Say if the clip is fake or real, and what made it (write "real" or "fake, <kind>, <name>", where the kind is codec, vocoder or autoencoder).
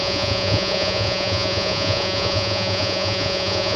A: fake, vocoder, Vocos